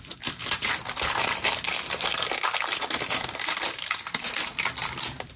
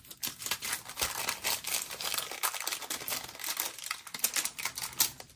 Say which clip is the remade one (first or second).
first